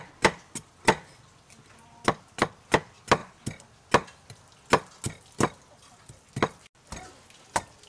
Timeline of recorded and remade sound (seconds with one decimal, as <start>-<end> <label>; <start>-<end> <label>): 0.0-7.9 recorded